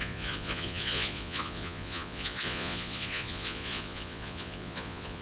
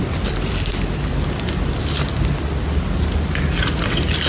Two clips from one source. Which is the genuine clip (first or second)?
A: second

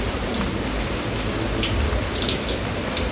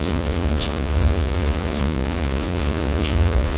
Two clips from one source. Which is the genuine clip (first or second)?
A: first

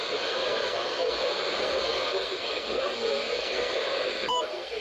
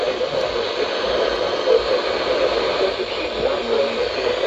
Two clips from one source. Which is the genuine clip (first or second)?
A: second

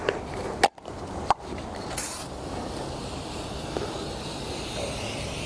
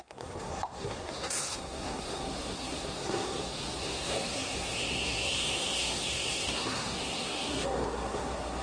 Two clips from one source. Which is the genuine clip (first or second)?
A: first